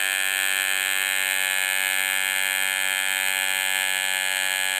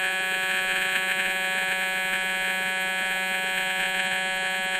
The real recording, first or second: first